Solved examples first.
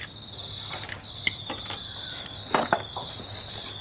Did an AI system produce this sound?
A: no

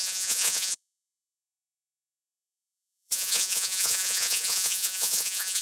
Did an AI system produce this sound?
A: yes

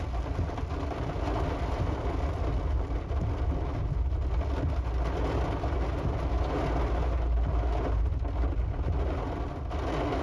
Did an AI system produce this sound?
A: no